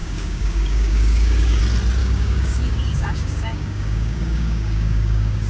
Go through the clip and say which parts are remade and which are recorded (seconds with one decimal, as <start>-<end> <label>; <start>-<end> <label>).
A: 0.0-1.6 remade; 1.6-2.0 recorded; 2.0-5.5 remade